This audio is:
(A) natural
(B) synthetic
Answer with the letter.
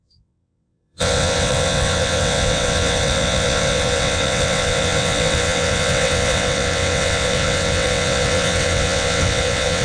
B